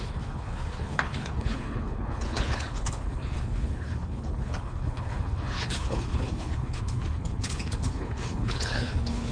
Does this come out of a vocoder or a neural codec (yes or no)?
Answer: yes